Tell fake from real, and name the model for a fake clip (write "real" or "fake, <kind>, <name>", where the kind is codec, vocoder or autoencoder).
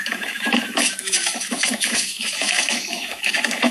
fake, autoencoder, DAC-VAE